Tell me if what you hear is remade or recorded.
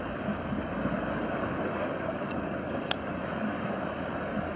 remade